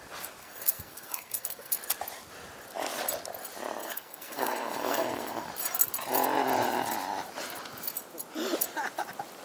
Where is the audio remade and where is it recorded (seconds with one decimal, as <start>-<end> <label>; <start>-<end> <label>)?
0.0-0.4 recorded; 0.4-1.8 remade; 1.8-3.8 recorded; 3.8-5.5 remade; 5.5-9.4 recorded